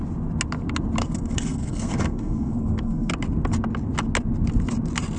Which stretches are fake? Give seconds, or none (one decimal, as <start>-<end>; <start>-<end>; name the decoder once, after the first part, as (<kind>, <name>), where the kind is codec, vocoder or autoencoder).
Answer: 1.0-3.1 (codec, SNAC)